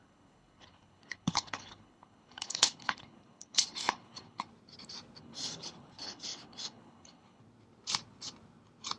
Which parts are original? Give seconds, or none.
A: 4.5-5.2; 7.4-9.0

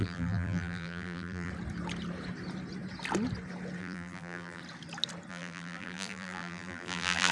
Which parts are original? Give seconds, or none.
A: 1.5-3.8; 4.6-5.3

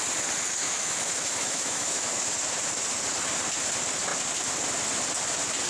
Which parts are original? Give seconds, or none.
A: 0.0-0.6; 2.3-5.7

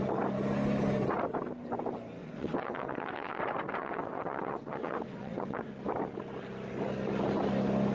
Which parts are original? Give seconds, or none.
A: 0.0-2.2; 3.4-3.8; 5.7-7.9

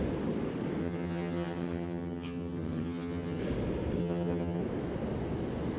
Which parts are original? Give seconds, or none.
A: 0.0-0.8; 3.4-4.0; 4.6-5.8